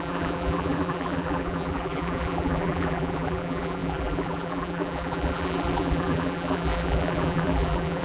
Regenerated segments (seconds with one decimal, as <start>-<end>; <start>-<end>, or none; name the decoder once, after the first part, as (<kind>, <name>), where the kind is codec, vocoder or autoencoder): 0.0-8.0 (vocoder, BigVGAN v2)